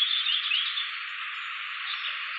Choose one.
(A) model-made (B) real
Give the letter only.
A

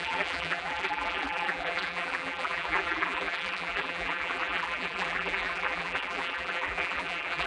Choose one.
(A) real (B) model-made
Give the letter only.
B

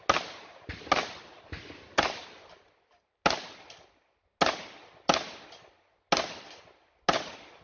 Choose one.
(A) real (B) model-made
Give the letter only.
A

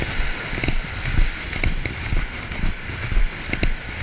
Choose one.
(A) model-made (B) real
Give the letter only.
B